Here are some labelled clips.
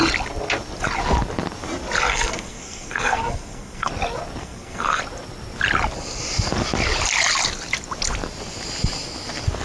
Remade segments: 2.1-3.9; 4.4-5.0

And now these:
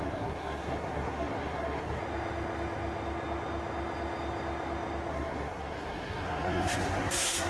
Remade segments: 0.0-2.0; 5.1-7.5

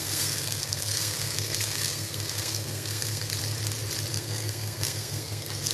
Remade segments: 0.0-3.3; 4.1-5.7